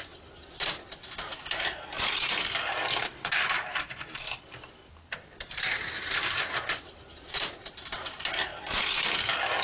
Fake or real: fake